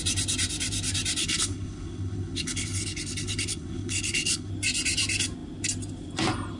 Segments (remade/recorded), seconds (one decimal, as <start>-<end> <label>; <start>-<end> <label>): 0.0-1.2 recorded; 1.2-4.5 remade; 4.5-6.6 recorded